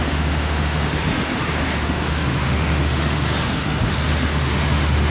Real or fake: fake